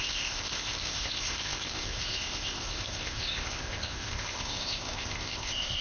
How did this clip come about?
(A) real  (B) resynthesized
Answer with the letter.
B